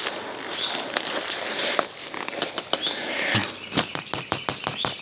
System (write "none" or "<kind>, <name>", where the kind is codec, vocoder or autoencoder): none